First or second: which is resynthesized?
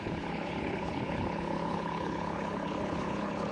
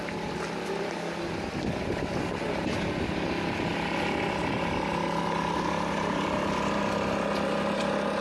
first